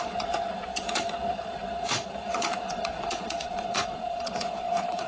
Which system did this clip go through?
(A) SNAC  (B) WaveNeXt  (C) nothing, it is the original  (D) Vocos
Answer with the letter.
D